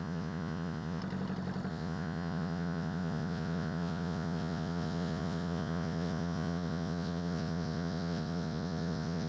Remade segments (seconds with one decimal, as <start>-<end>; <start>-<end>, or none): 0.0-1.0; 1.7-9.3